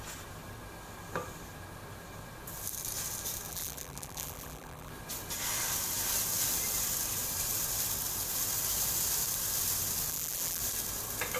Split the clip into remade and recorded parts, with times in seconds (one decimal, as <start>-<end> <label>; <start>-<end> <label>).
0.0-3.5 recorded; 3.5-4.9 remade; 4.9-10.1 recorded; 10.1-10.6 remade; 10.6-11.4 recorded